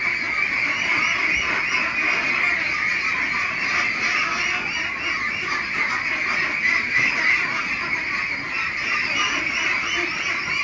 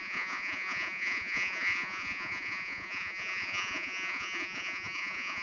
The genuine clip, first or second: first